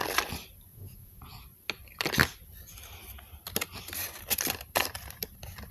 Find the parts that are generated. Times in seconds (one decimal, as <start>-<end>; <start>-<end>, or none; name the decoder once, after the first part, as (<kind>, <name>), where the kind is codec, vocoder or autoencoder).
0.7-1.2 (vocoder, Vocos)

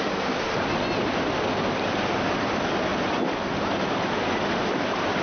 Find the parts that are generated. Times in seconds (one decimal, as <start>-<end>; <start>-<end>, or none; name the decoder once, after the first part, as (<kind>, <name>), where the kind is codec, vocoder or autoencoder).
none

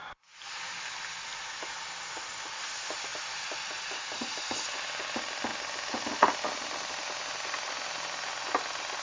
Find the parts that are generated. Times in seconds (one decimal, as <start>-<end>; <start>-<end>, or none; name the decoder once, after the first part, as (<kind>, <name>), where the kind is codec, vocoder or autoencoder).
none

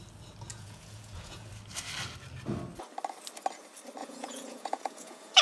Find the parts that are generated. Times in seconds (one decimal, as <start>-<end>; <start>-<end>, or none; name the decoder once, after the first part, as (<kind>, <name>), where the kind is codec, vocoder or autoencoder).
0.5-1.5 (vocoder, Vocos); 4.0-5.4

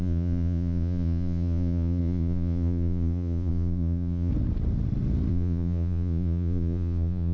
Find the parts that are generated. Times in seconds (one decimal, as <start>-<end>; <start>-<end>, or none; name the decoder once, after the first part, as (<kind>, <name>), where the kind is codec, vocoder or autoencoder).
0.0-4.3 (vocoder, Vocos); 5.3-7.3

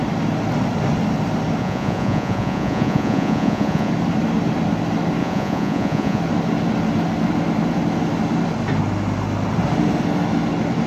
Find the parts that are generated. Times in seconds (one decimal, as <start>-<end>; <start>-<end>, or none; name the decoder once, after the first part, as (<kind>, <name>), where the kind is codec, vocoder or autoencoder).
1.6-3.9 (vocoder, Vocos); 5.2-6.2

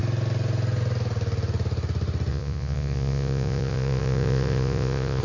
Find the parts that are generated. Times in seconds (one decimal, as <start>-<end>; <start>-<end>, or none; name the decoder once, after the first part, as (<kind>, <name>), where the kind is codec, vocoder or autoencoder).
2.3-5.2 (vocoder, Vocos)

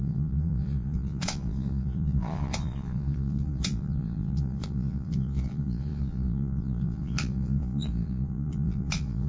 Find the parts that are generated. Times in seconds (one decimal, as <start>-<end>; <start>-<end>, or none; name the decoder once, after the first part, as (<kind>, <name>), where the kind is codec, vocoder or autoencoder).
0.0-9.3 (vocoder, Vocos)